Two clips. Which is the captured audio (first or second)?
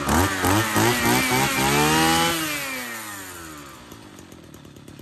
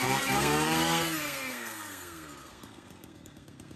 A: first